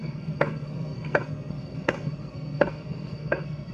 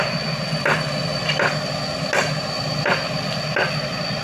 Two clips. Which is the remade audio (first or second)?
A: first